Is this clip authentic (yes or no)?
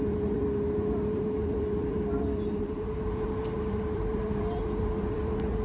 no